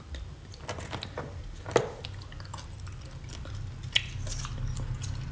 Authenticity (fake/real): real